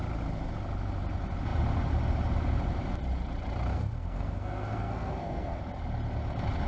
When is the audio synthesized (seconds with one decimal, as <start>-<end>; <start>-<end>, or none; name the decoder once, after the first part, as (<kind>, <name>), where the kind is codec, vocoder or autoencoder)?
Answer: 3.7-5.6 (codec, SNAC)